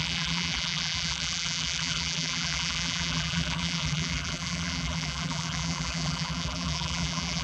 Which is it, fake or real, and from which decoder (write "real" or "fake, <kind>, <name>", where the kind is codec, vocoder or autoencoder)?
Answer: fake, vocoder, BigVGAN v2